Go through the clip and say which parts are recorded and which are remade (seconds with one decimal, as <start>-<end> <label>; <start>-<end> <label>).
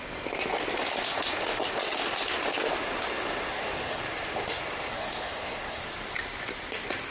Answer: 0.0-3.5 recorded; 3.5-4.0 remade; 4.0-4.9 recorded; 4.9-5.8 remade; 5.8-7.1 recorded